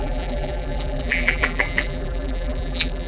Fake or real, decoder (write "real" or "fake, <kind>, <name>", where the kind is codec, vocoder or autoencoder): fake, vocoder, BigVGAN v2